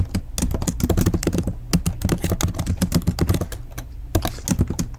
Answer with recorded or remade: recorded